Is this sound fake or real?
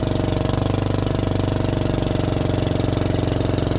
real